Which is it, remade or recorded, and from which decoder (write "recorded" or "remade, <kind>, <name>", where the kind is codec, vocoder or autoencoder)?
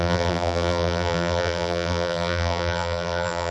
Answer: remade, vocoder, BigVGAN v2